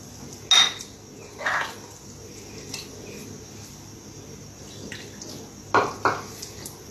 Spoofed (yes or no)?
no